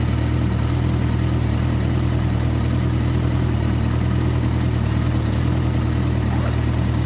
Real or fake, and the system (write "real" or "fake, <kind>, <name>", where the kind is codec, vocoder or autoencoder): real